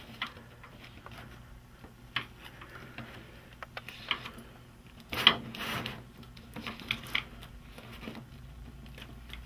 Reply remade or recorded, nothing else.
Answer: recorded